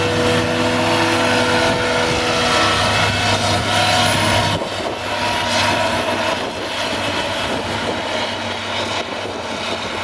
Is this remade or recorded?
recorded